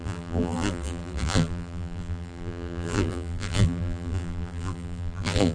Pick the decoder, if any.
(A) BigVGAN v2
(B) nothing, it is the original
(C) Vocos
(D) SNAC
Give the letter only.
A